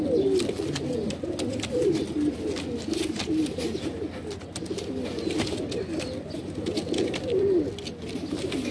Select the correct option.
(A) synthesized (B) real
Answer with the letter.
B